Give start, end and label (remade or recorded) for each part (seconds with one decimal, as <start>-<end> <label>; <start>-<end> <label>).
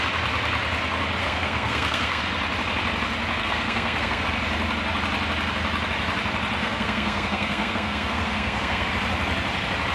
0.0-1.2 recorded; 1.2-2.2 remade; 2.2-3.4 recorded; 3.4-4.2 remade; 4.2-6.6 recorded; 6.6-8.9 remade; 8.9-9.9 recorded